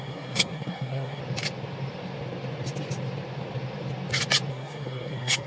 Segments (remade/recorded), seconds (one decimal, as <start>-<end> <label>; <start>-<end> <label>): 0.0-1.2 remade; 1.2-4.5 recorded; 4.5-5.5 remade